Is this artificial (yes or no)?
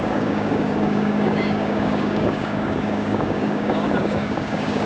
yes